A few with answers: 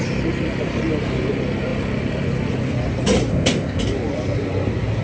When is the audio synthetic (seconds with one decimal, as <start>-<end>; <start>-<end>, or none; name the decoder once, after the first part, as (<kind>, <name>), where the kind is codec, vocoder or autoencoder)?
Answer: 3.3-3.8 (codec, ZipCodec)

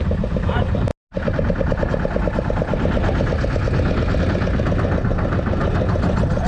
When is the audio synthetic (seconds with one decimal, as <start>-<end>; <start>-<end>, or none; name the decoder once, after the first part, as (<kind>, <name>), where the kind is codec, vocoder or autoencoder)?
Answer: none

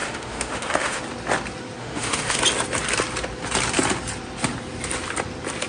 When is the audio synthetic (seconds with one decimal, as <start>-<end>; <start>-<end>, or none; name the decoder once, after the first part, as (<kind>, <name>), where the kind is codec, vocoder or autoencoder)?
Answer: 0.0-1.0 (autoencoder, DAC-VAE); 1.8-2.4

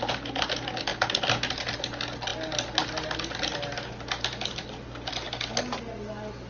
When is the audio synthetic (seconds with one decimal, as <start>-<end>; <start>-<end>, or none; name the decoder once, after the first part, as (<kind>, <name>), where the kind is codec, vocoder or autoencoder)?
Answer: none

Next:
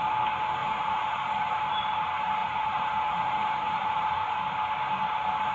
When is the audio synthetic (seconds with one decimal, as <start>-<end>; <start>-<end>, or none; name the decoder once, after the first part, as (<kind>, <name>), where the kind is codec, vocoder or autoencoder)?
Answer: 0.6-1.6 (vocoder, Vocos); 2.4-4.4